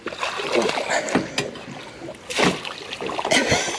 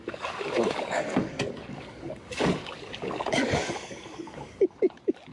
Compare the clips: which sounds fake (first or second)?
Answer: second